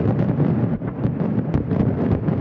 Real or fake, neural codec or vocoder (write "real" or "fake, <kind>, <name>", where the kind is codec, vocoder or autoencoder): real